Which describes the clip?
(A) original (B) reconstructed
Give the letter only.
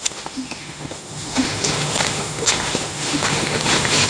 B